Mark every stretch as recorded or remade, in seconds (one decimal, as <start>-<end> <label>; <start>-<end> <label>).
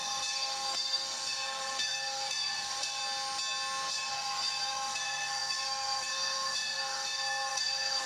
0.0-3.0 remade; 3.0-3.9 recorded; 3.9-8.1 remade